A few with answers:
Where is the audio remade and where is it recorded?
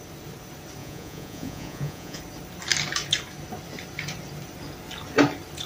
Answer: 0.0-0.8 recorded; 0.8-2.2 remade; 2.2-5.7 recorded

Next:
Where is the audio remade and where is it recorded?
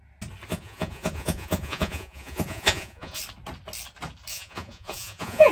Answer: 0.0-0.5 recorded; 0.5-3.2 remade; 3.2-4.3 recorded; 4.3-5.5 remade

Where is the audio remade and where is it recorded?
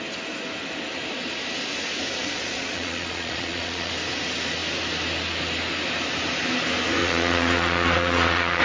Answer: 0.0-2.2 recorded; 2.2-3.9 remade; 3.9-7.0 recorded; 7.0-8.6 remade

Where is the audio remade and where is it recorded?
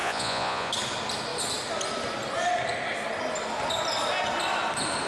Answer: 0.0-0.7 remade; 0.7-5.1 recorded